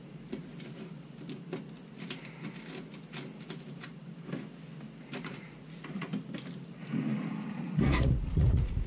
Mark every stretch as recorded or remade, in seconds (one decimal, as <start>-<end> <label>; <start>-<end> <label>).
0.0-0.5 remade; 0.5-5.2 recorded; 5.2-6.1 remade; 6.1-7.5 recorded; 7.5-8.9 remade